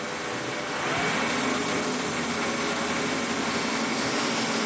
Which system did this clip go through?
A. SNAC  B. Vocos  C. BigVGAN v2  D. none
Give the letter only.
D